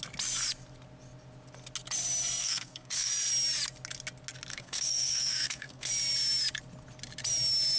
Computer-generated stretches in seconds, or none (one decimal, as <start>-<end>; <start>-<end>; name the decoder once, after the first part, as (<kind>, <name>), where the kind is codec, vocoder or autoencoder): 2.4-3.1 (codec, SNAC); 4.5-5.9

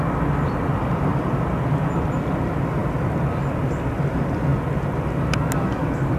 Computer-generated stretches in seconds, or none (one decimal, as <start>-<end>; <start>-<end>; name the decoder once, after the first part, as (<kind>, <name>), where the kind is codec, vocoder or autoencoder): none

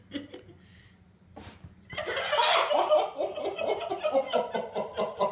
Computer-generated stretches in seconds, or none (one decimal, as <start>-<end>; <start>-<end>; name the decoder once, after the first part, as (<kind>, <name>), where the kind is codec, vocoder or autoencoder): none

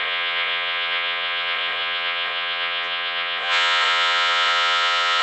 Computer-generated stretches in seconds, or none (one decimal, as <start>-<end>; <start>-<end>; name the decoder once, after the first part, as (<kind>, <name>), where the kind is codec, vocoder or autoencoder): 0.0-5.2 (vocoder, Vocos)